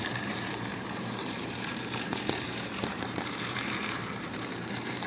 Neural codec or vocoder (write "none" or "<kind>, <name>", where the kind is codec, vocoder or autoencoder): vocoder, BigVGAN v2